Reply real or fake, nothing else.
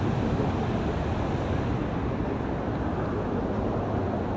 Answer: real